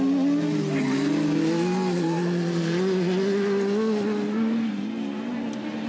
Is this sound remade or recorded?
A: recorded